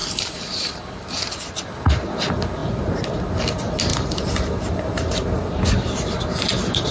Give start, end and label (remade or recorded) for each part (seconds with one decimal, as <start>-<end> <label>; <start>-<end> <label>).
0.0-3.9 recorded; 3.9-5.5 remade; 5.5-6.9 recorded